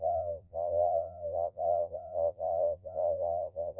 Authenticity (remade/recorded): remade